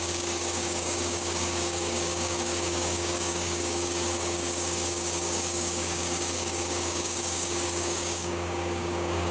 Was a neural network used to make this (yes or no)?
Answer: yes